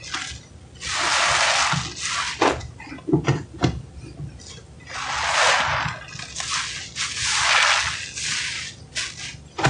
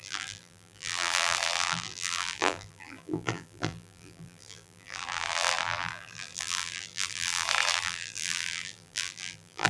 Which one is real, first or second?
first